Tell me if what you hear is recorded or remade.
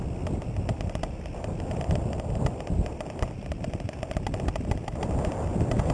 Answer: recorded